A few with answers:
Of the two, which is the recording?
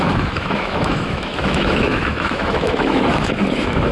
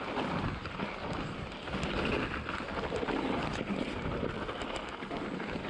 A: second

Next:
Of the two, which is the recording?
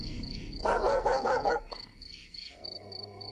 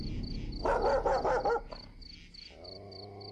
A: second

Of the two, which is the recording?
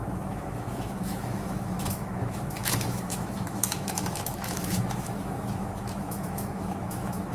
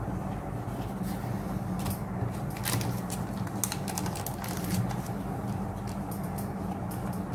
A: second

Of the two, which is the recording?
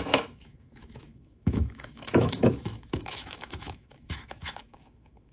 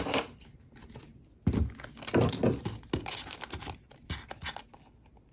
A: second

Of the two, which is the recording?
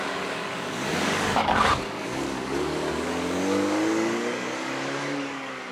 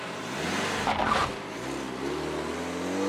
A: second